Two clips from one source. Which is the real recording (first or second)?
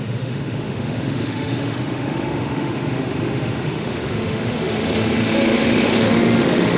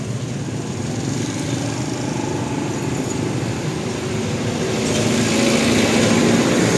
second